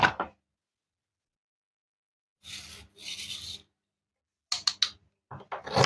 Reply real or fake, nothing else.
real